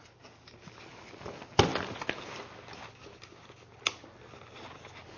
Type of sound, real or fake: real